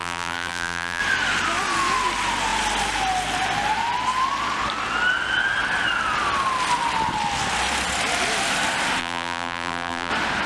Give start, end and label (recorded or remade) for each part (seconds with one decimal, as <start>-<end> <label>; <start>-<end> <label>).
0.0-1.0 remade; 1.0-9.0 recorded; 9.0-10.1 remade; 10.1-10.5 recorded

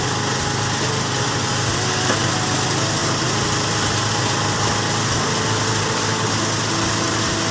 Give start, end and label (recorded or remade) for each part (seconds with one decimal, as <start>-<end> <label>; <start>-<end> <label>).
0.0-7.5 recorded

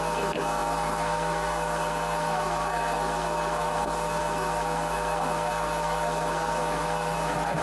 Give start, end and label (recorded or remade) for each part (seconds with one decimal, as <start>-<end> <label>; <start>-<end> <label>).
0.0-7.6 remade

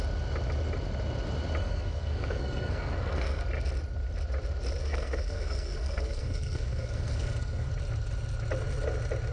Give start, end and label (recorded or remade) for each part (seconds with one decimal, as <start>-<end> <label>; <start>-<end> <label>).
0.0-1.6 recorded; 1.6-3.4 remade; 3.4-4.8 recorded; 4.8-7.7 remade; 7.7-9.3 recorded

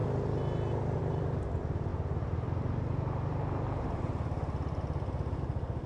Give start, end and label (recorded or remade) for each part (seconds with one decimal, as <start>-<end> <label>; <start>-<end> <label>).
0.0-5.9 recorded

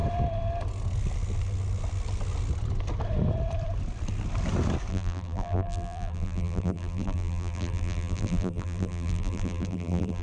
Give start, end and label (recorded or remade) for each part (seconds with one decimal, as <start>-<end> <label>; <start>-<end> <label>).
0.0-4.9 recorded; 4.9-10.2 remade